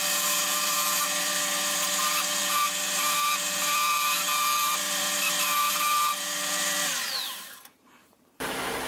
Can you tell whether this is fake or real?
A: fake